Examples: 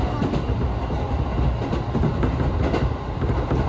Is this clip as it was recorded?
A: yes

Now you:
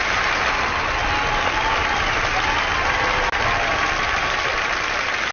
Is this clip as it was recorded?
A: yes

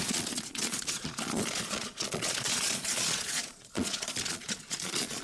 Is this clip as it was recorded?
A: no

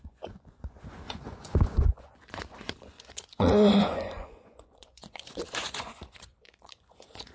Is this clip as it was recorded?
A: no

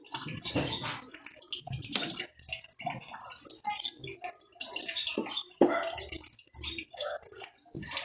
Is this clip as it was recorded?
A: yes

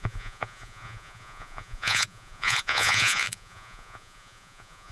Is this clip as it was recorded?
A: no